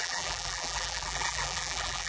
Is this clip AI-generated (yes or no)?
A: yes